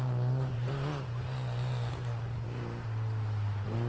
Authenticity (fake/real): real